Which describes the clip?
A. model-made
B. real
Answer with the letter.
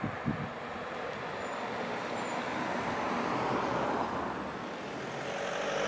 B